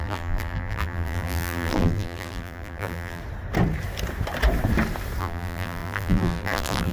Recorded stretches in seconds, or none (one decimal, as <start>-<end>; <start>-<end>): 3.2-5.2